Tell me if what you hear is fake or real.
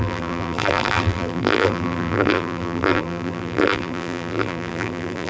fake